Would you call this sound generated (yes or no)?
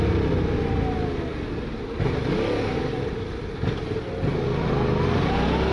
no